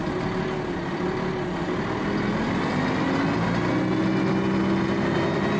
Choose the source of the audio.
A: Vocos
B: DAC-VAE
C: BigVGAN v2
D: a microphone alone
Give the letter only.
D